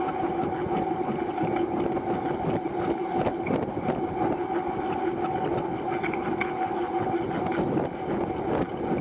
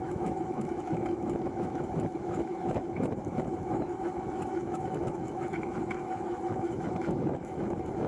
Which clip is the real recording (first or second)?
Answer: first